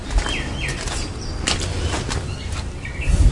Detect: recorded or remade recorded